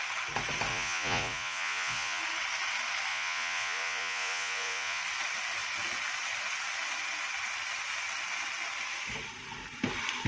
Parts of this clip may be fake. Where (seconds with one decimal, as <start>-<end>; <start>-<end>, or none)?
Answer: 0.7-2.2; 3.1-5.0